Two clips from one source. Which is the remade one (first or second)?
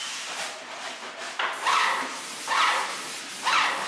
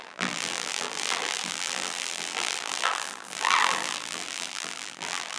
second